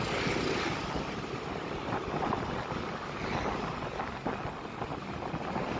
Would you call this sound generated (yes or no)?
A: no